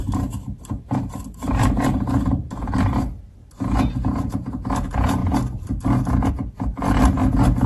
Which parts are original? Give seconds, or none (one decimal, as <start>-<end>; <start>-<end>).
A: 2.4-7.7